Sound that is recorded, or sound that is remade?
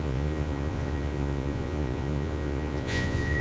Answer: remade